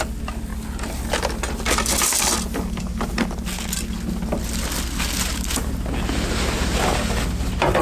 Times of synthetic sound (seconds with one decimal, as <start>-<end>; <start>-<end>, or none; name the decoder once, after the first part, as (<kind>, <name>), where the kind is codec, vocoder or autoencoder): none